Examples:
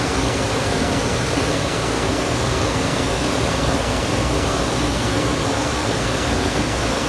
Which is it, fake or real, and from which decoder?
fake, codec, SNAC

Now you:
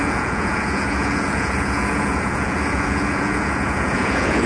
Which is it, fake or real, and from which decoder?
fake, vocoder, Vocos